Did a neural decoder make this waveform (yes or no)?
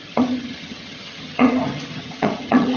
yes